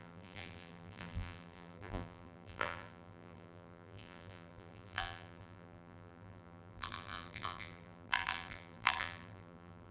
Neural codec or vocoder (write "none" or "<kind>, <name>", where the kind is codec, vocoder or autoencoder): vocoder, BigVGAN v2